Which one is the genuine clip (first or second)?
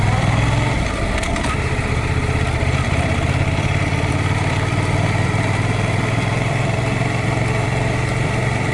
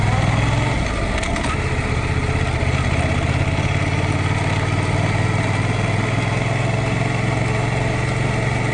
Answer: second